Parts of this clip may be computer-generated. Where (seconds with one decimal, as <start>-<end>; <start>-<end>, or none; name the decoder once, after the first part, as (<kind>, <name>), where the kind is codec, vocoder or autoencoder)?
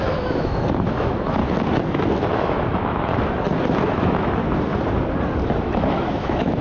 0.0-1.4 (autoencoder, DAC-VAE); 2.3-3.1; 4.0-4.4; 5.6-6.6